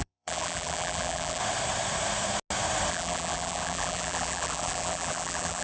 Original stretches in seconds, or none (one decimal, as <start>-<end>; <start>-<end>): 1.4-2.9